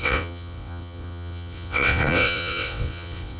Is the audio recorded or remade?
remade